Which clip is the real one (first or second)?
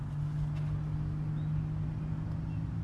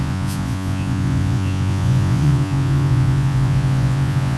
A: first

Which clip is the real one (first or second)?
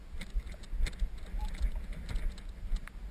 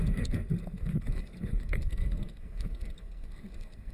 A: first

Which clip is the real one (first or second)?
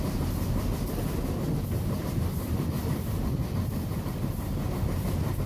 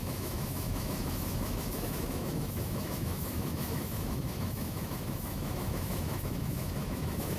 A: first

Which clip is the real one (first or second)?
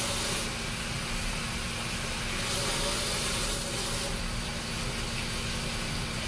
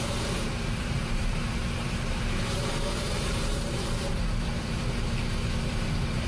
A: first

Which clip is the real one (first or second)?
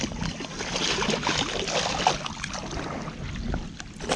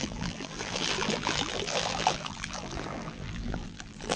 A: first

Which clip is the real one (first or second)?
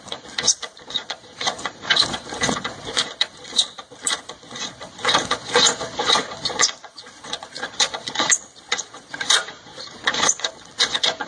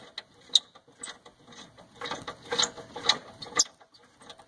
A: second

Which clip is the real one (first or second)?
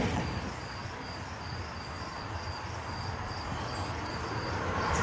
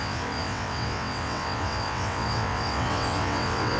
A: first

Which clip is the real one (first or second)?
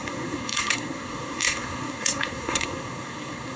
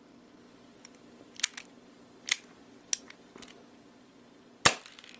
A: second